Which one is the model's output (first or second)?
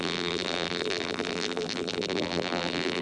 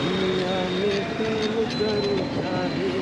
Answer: first